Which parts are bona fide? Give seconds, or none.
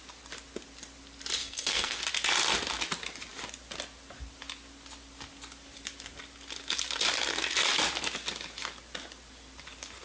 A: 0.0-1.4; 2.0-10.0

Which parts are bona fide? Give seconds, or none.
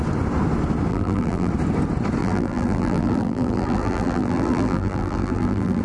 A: 0.0-0.9; 1.5-2.2